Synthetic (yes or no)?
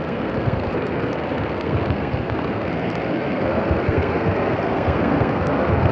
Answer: yes